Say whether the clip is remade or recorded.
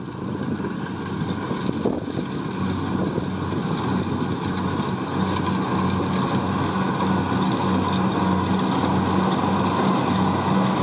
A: recorded